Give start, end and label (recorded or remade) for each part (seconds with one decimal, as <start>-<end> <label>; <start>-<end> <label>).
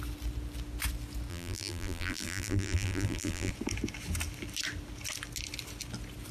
0.0-1.3 recorded; 1.3-3.5 remade; 3.5-6.3 recorded